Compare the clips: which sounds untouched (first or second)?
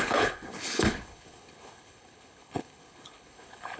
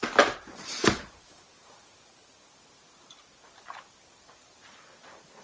second